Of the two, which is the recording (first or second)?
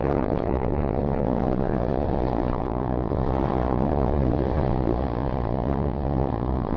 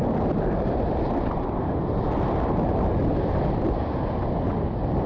second